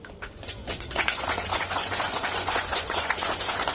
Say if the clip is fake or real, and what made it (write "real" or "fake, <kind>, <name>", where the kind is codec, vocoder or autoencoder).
fake, vocoder, Vocos